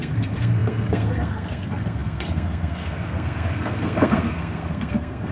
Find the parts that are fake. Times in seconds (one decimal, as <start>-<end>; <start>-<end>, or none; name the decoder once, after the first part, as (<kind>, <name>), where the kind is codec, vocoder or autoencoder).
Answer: 0.0-5.3 (codec, SNAC)